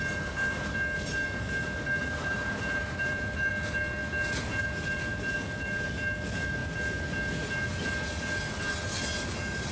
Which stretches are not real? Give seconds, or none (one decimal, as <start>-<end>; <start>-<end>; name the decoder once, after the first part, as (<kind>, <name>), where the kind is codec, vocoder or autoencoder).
2.0-3.5 (vocoder, BigVGAN v2)